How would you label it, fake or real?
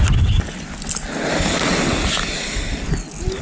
real